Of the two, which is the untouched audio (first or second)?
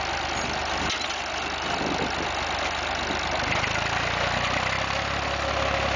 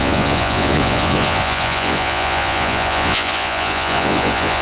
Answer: first